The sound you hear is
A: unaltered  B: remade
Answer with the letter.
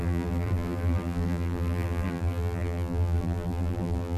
B